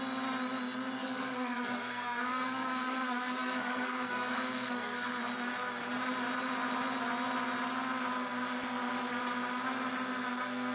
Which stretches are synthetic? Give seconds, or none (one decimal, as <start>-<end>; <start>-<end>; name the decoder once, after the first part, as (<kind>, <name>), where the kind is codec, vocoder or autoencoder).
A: 1.0-5.2 (codec, SNAC)